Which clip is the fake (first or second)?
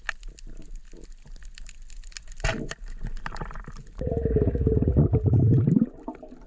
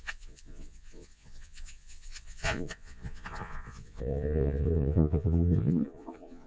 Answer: second